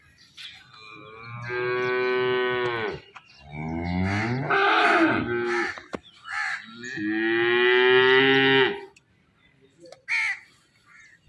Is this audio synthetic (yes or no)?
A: no